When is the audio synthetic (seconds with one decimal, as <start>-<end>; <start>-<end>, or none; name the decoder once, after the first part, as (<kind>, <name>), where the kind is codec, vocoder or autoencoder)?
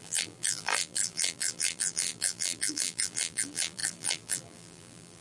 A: 0.0-5.2 (vocoder, BigVGAN v2)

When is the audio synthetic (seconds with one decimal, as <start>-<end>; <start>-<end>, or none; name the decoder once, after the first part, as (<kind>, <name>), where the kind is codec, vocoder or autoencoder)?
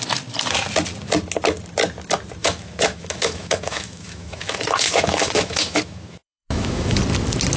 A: 2.4-7.0 (autoencoder, DAC-VAE)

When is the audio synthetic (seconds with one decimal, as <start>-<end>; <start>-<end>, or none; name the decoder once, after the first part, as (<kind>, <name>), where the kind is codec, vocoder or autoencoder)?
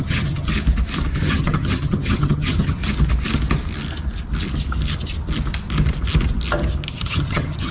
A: 0.0-0.5 (vocoder, HiFi-GAN); 1.2-2.8; 6.9-7.7